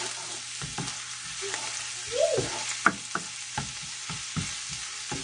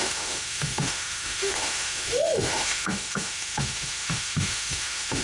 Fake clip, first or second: second